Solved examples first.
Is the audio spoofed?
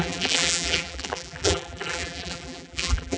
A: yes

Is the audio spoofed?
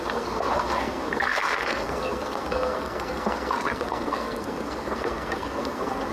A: yes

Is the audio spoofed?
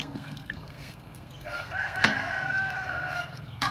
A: yes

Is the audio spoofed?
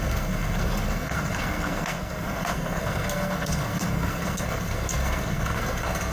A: yes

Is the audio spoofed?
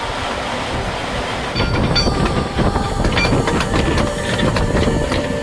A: no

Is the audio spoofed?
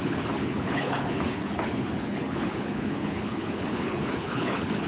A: yes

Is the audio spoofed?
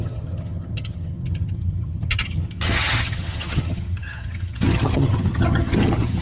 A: yes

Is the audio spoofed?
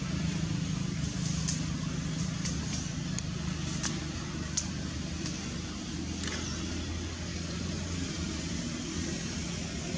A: no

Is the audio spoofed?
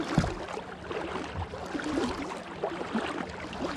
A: no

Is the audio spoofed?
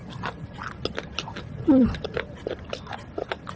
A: no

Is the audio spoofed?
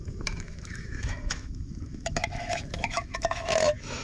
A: yes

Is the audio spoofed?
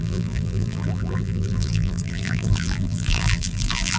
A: yes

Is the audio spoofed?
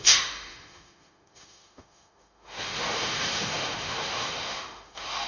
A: yes